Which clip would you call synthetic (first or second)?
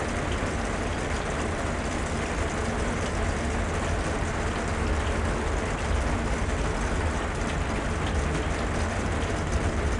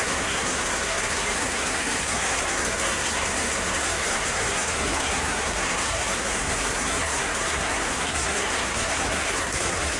second